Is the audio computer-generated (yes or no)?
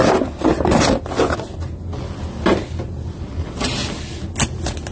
no